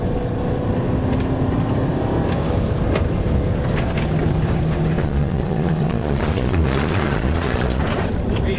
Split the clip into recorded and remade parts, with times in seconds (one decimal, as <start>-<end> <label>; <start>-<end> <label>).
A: 0.0-5.0 recorded; 5.0-7.8 remade; 7.8-8.6 recorded